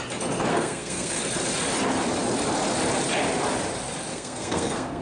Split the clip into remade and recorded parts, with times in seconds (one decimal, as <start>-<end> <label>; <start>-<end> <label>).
0.0-0.5 recorded; 0.5-1.2 remade; 1.2-4.1 recorded; 4.1-5.0 remade